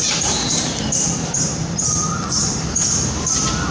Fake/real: fake